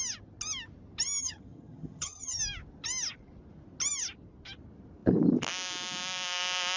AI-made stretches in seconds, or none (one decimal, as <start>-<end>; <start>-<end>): 1.2-2.4